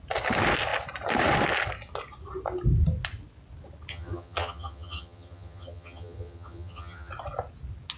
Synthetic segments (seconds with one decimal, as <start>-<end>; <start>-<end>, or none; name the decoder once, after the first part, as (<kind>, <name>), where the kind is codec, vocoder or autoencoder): 3.9-7.1 (vocoder, HiFi-GAN)